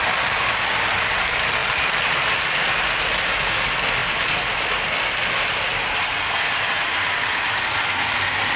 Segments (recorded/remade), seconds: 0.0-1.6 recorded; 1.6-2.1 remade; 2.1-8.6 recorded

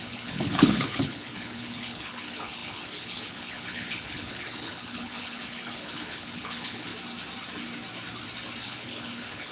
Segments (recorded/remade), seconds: 0.0-6.9 remade; 6.9-8.6 recorded; 8.6-9.5 remade

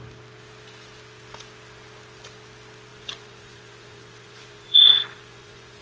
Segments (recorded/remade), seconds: 0.0-2.9 recorded; 2.9-5.8 remade